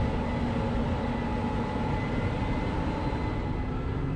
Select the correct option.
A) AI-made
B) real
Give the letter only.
B